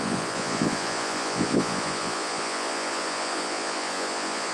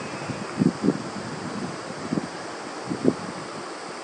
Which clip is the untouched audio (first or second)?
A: second